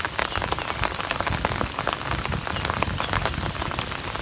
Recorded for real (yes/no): yes